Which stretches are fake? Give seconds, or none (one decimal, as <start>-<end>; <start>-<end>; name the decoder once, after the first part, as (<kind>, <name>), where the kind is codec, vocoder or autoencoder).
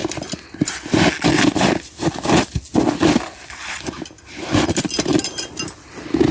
none